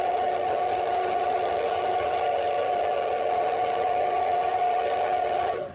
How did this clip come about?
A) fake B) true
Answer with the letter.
A